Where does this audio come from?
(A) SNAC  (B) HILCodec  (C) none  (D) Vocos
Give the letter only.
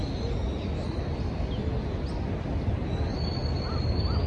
C